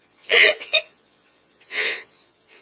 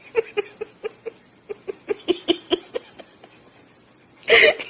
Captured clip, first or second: second